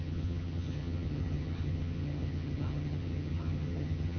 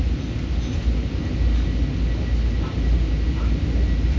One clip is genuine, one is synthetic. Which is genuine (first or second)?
second